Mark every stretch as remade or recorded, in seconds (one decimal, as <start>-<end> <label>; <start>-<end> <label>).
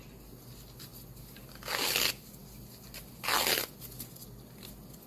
0.0-5.1 recorded